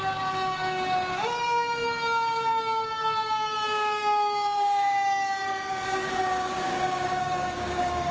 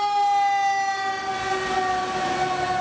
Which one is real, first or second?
second